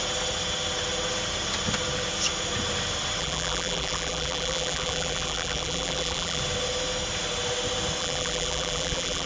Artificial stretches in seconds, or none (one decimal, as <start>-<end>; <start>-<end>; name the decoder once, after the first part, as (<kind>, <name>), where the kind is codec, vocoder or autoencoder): 3.2-6.4 (vocoder, BigVGAN v2); 8.0-9.3